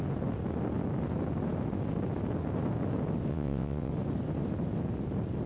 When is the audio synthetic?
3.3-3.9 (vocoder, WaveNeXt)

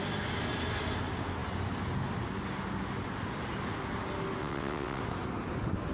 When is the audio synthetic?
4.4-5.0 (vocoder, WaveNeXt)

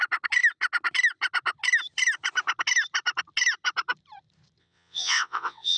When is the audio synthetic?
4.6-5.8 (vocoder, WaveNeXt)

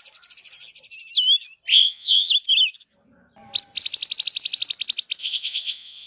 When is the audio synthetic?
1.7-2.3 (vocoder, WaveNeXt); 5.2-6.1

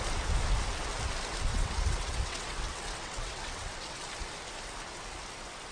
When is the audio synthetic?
1.5-4.0 (vocoder, WaveNeXt)